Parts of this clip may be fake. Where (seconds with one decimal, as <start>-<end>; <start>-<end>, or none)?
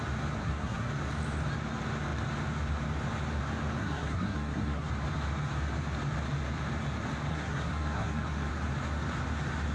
0.4-0.9; 3.8-4.9; 7.3-8.5